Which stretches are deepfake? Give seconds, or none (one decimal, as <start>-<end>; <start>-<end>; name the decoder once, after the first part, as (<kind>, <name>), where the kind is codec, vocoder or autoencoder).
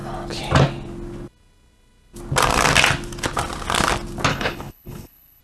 4.3-5.4 (codec, HILCodec)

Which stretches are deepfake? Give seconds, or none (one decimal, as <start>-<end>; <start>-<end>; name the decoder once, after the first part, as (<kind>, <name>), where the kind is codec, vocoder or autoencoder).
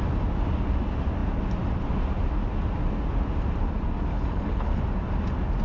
4.1-4.8 (codec, HILCodec)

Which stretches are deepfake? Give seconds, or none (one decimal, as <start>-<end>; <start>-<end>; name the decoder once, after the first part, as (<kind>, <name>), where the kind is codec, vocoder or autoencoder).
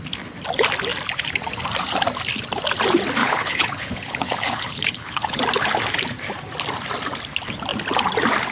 3.2-5.4 (codec, HILCodec)